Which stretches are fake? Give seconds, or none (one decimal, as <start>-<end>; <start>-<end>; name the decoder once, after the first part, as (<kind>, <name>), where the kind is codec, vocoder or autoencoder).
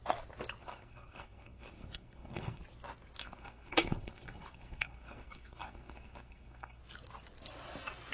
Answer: 0.6-2.6 (codec, SNAC); 3.2-6.8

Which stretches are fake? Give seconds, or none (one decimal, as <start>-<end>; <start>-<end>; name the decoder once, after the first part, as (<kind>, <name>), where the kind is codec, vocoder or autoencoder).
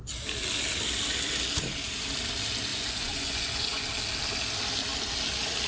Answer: 2.7-3.8 (vocoder, Vocos)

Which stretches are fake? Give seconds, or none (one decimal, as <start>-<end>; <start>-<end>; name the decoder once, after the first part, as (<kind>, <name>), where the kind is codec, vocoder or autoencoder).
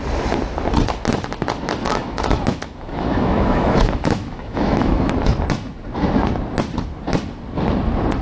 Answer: 1.8-5.1 (autoencoder, DAC-VAE)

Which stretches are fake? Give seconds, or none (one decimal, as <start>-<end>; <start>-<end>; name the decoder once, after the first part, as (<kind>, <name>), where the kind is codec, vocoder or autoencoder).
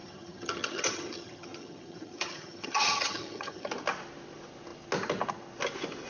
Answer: 0.0-3.7 (vocoder, HiFi-GAN)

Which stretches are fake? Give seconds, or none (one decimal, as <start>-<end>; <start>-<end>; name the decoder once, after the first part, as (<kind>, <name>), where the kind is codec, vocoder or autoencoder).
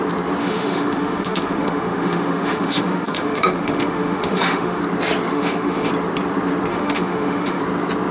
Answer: 0.4-4.8 (autoencoder, DAC-VAE); 5.3-5.9; 6.7-7.6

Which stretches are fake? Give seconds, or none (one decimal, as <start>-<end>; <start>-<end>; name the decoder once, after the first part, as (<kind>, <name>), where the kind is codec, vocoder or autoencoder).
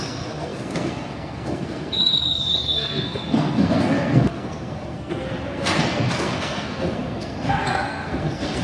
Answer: 0.0-8.6 (codec, SNAC)